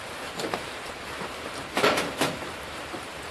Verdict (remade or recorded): remade